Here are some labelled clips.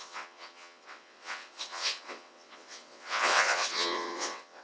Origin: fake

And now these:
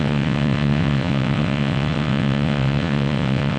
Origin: fake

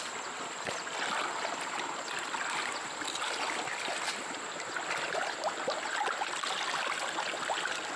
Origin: real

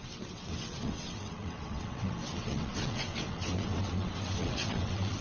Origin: fake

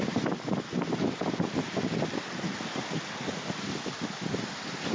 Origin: real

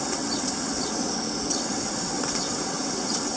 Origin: fake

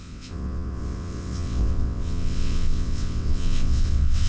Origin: fake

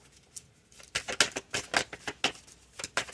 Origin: real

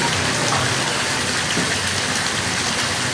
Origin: real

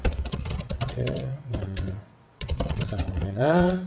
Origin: fake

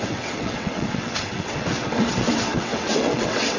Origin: fake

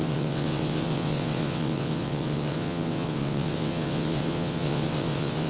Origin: fake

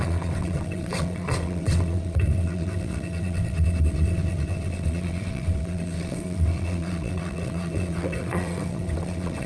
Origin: fake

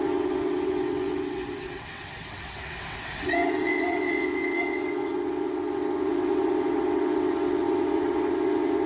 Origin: fake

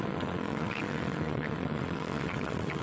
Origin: fake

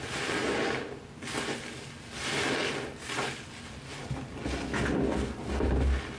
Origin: real